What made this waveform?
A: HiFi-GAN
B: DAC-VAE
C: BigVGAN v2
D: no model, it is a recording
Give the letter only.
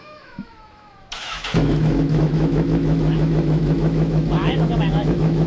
B